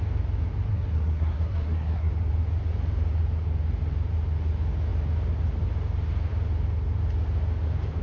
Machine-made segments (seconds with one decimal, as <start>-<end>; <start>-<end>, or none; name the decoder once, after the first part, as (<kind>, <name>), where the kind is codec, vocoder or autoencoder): 0.7-2.1 (codec, SNAC)